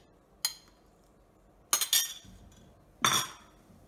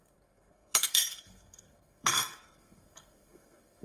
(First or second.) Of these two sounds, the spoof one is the second